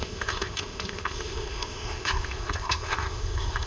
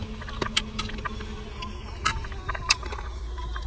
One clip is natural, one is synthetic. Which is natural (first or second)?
second